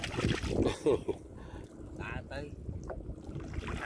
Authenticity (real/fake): real